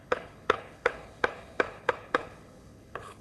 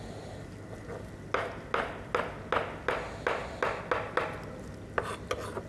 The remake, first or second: first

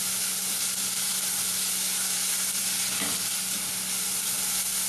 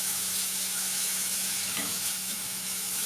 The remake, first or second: second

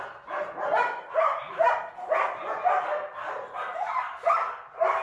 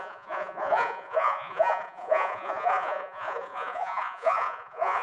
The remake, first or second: second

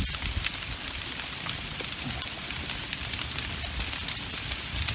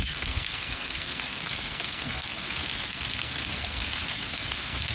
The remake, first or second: second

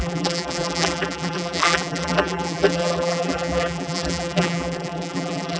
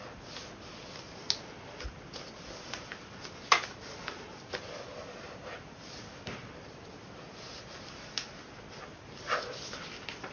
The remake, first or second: first